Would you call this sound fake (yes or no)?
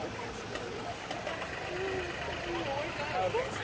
no